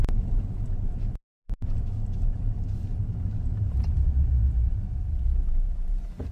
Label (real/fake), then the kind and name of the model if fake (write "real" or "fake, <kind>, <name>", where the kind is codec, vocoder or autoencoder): fake, vocoder, BigVGAN v2